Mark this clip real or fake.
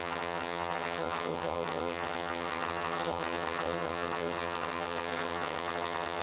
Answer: fake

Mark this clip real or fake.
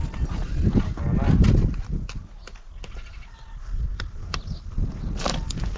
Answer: real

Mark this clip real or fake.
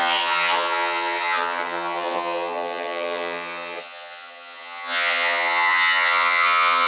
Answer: fake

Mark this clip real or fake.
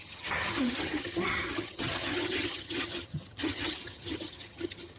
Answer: fake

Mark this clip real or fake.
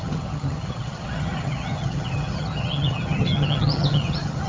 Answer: fake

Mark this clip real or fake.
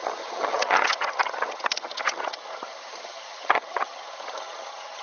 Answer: fake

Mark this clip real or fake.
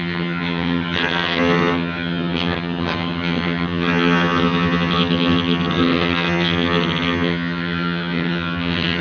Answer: fake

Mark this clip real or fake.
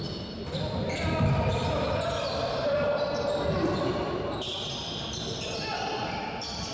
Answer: real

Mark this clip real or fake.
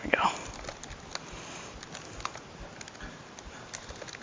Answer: real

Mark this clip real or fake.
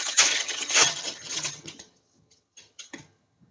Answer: fake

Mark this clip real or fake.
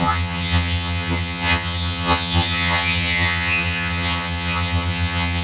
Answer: fake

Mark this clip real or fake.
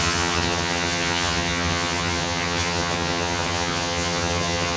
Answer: fake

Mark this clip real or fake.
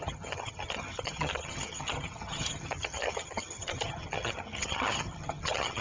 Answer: fake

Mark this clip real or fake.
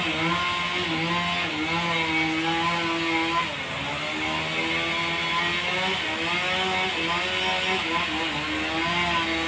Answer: real